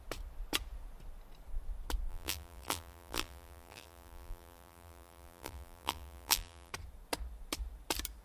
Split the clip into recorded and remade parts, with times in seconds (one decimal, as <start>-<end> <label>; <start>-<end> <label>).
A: 0.0-2.1 recorded; 2.1-6.7 remade; 6.7-8.2 recorded